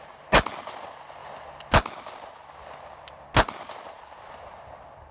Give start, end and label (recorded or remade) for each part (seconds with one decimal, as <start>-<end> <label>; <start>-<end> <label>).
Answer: 0.0-5.1 recorded